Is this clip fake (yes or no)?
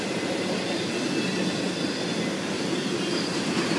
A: no